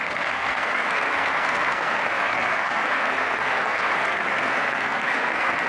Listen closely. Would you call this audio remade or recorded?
remade